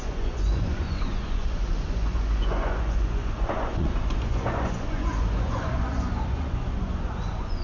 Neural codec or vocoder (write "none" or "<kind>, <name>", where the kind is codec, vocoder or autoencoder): vocoder, Vocos